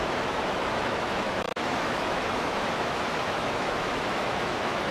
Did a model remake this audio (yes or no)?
yes